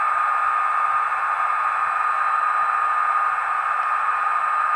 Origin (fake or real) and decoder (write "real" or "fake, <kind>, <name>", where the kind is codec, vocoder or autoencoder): real